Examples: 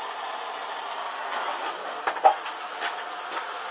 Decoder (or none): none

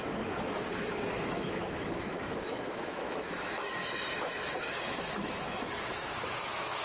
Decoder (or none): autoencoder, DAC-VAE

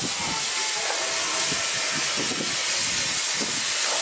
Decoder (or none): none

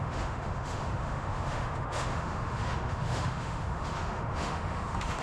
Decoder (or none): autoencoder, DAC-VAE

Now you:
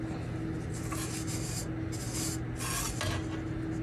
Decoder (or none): none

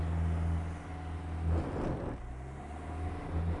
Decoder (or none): none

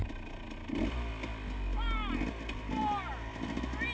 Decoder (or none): none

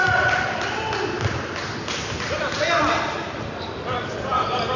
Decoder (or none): none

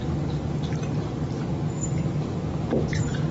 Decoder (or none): none